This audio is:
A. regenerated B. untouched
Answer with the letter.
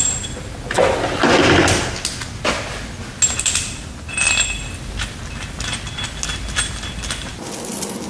B